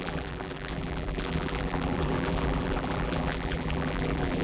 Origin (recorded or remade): remade